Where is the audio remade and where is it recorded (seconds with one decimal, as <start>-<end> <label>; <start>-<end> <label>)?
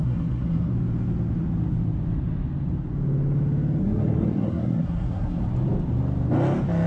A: 0.0-0.7 remade; 0.7-3.8 recorded; 3.8-5.4 remade; 5.4-6.9 recorded